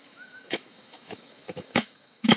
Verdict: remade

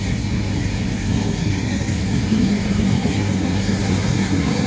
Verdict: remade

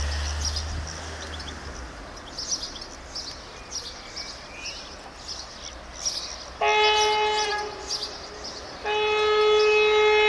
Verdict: recorded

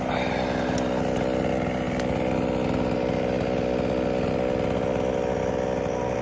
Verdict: recorded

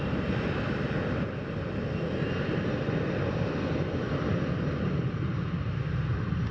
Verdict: recorded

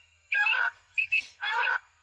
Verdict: remade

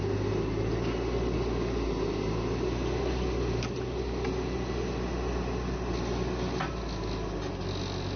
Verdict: recorded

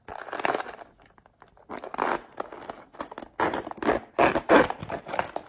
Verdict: recorded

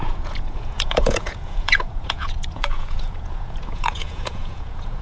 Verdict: remade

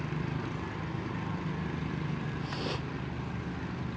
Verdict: recorded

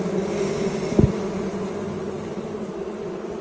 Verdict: recorded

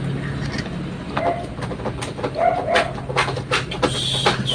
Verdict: recorded